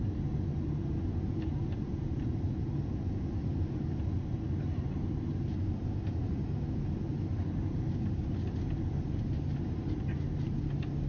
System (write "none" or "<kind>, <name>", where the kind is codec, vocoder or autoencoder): none